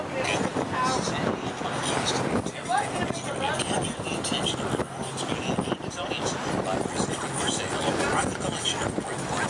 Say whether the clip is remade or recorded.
recorded